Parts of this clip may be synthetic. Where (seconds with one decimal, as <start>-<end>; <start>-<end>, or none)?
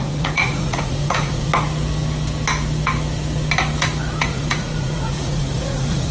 0.0-1.5; 4.2-6.1